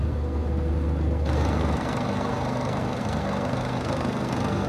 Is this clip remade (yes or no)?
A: yes